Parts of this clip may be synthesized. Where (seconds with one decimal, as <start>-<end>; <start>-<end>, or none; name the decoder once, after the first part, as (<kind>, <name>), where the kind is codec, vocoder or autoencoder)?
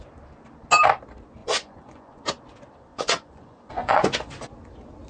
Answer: 1.4-2.2 (vocoder, Vocos); 2.9-4.3